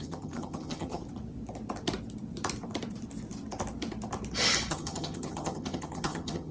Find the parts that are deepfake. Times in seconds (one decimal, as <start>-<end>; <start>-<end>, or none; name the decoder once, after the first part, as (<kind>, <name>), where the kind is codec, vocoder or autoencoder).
0.0-1.0 (vocoder, HiFi-GAN); 4.7-6.5